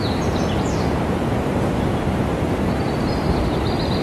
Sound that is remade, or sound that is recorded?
remade